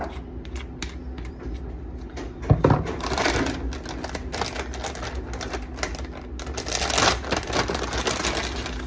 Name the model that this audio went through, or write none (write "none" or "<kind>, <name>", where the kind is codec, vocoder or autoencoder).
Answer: none